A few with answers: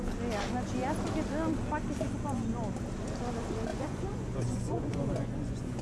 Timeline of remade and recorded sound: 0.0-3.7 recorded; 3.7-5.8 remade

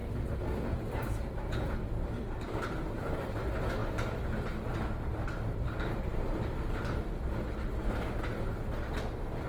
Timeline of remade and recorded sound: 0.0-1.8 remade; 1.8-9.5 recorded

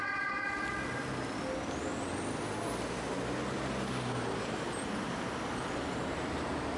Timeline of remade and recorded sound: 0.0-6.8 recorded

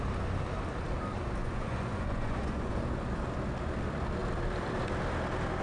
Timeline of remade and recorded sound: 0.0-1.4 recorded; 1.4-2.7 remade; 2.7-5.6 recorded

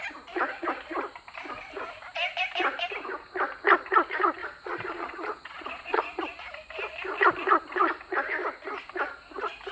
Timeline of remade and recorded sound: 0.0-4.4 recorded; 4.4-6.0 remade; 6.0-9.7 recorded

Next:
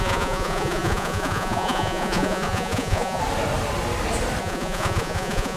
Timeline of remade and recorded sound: 0.0-3.2 remade; 3.2-4.4 recorded; 4.4-5.6 remade